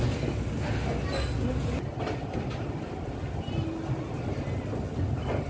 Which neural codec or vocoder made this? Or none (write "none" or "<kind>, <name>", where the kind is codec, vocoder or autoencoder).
none